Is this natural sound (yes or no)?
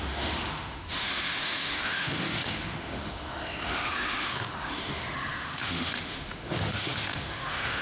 no